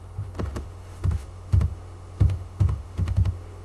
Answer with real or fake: fake